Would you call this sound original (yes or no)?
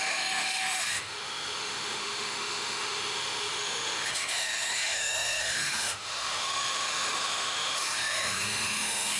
no